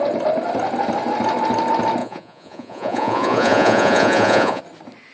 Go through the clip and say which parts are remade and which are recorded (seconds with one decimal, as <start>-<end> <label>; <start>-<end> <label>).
0.0-2.0 recorded; 2.0-4.6 remade; 4.6-5.1 recorded